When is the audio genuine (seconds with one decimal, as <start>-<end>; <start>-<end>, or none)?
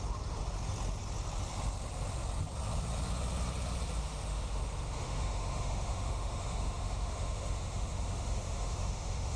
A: 0.0-4.0